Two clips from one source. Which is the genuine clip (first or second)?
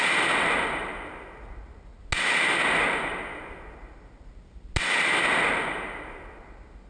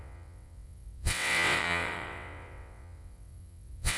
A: first